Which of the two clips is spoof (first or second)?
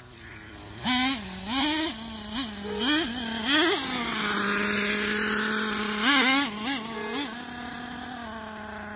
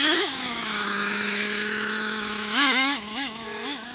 second